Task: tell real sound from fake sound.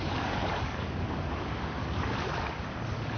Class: fake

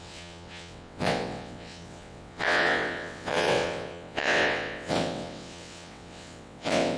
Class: fake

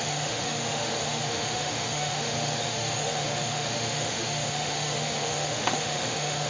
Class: fake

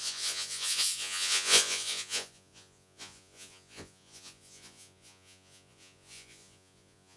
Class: fake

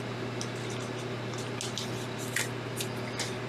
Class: real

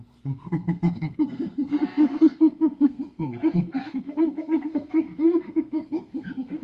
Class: fake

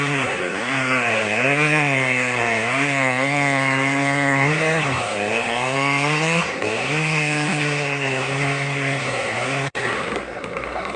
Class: fake